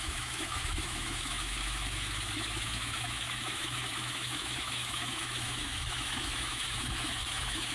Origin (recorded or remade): remade